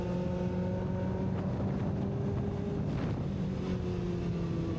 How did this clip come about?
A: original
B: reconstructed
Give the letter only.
A